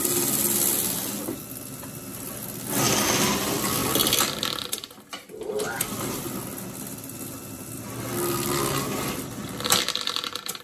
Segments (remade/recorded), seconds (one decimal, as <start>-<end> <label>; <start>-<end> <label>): 0.0-10.6 recorded